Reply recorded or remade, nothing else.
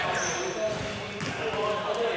recorded